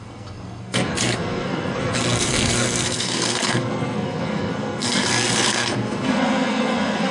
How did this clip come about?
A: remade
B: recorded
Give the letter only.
A